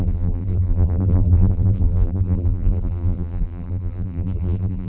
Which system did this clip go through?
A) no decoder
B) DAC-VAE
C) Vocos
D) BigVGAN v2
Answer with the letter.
D